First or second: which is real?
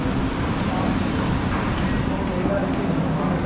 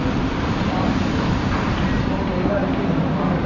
first